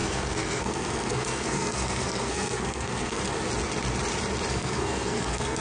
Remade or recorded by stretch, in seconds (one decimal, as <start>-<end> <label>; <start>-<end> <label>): 0.0-3.2 remade; 3.2-4.5 recorded; 4.5-5.6 remade